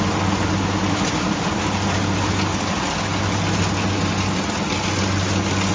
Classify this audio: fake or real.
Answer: real